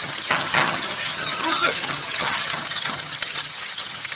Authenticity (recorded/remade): remade